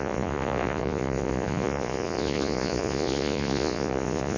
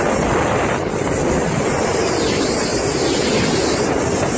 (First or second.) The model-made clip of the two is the first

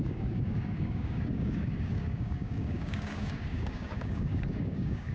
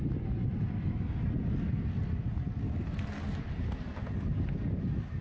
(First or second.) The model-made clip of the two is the first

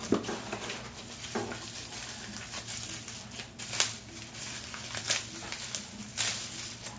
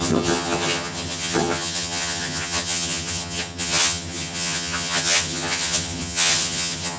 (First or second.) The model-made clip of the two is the second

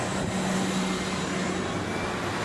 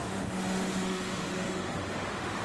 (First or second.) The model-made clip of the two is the second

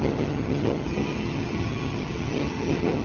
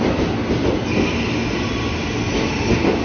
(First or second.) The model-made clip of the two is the first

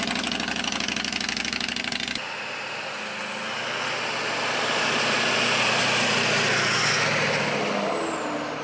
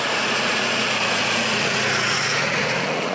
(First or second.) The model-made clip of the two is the second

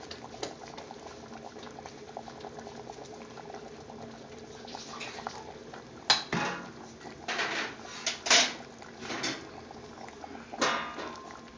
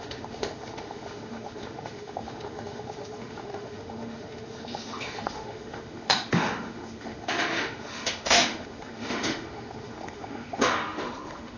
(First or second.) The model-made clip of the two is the second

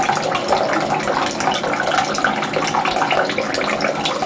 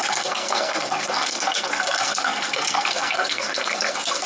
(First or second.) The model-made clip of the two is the second